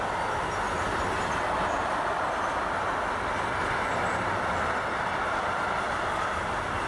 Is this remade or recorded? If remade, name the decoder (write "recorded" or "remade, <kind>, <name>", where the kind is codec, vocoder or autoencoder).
recorded